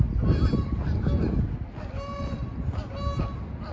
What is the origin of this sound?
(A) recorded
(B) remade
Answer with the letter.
A